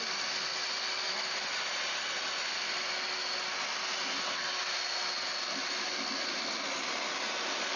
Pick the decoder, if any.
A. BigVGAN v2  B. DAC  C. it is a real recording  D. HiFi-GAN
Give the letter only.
C